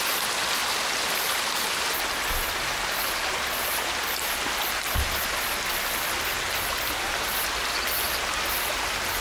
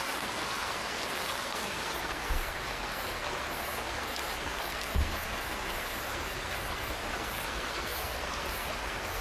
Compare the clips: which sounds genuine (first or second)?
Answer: first